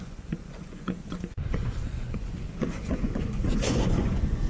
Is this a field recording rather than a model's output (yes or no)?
no